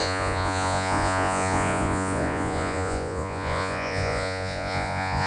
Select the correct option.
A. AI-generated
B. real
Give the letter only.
A